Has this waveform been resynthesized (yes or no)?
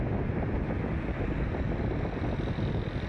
no